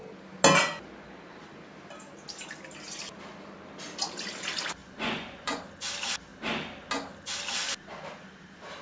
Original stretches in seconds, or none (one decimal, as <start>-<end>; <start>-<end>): 0.0-4.8; 5.6-8.8